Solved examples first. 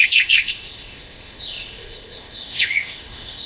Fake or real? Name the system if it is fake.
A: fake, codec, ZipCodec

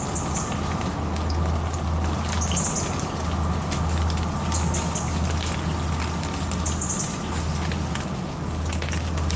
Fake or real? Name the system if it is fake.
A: real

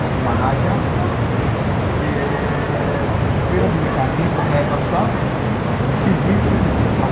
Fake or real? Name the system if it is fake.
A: real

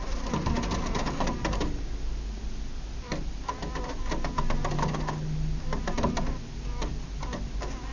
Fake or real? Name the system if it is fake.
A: real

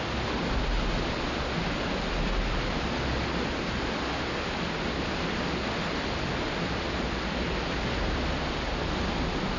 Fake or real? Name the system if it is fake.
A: real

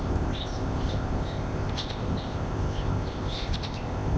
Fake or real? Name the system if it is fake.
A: fake, codec, ZipCodec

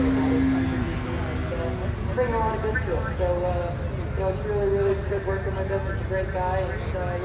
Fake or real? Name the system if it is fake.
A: real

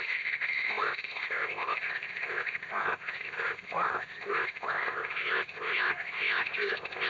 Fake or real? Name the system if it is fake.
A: fake, codec, ZipCodec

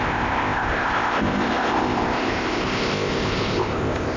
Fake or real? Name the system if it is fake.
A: fake, codec, ZipCodec